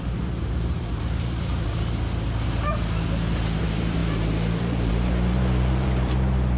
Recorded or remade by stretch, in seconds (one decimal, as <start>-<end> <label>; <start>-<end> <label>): 0.0-1.7 remade; 1.7-3.6 recorded; 3.6-6.6 remade